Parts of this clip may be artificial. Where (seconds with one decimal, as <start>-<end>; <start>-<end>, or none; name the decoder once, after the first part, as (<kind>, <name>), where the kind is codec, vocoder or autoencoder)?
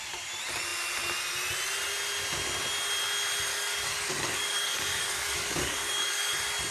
3.5-6.3 (codec, DAC)